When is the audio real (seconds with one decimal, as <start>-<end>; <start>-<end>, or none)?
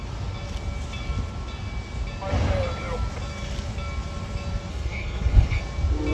0.0-4.7; 5.6-6.1